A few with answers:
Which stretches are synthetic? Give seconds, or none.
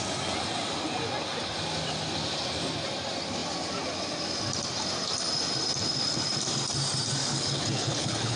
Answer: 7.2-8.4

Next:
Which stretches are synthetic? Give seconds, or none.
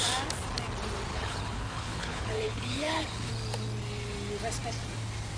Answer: 1.1-3.3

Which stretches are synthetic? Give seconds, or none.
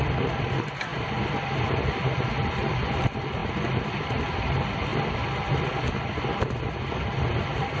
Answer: none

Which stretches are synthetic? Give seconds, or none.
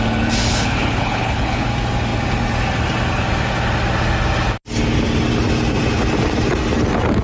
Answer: 0.4-1.7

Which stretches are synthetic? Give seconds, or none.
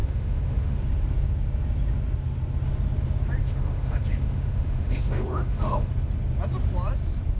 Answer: 0.0-0.8; 3.4-5.9